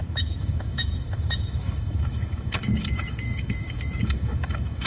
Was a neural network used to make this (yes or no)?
yes